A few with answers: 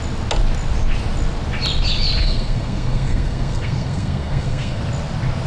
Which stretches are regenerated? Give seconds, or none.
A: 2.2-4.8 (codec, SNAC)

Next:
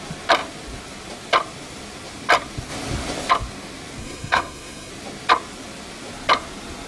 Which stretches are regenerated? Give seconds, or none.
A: 4.0-4.9 (codec, SNAC)

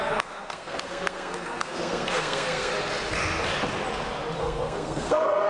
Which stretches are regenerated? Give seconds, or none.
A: 0.0-2.7 (codec, SNAC); 4.4-5.5

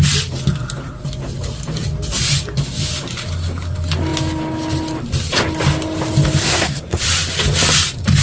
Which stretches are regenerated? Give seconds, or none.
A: 6.4-7.0 (codec, SNAC)